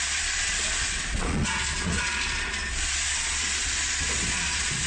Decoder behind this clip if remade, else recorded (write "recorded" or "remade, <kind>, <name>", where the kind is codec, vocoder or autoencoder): remade, vocoder, Vocos